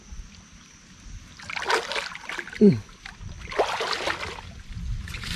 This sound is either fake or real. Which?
real